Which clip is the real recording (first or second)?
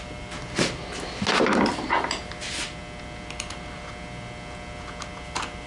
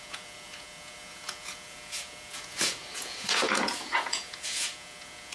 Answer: first